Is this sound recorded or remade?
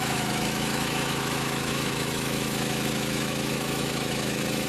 remade